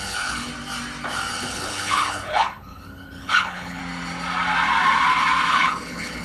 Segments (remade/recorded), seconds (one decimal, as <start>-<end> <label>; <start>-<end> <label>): 0.0-0.5 remade; 0.5-1.3 recorded; 1.3-3.8 remade; 3.8-5.5 recorded; 5.5-6.2 remade